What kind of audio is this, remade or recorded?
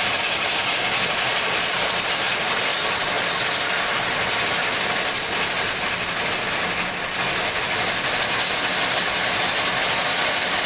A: recorded